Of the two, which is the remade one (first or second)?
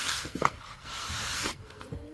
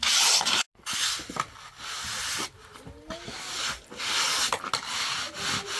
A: first